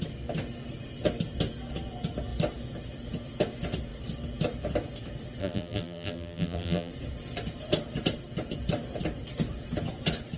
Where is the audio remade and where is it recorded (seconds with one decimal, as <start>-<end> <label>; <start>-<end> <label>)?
0.0-5.4 recorded; 5.4-6.9 remade; 6.9-10.4 recorded